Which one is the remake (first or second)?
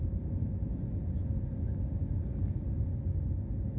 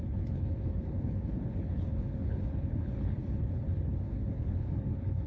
second